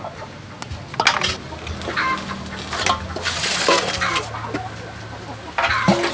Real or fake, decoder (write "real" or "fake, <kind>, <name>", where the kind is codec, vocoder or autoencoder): real